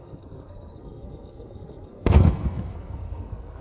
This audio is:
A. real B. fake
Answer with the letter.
B